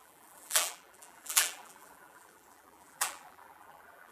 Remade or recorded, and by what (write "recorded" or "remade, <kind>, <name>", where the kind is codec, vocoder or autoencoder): remade, vocoder, BigVGAN v2